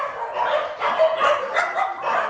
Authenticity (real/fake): real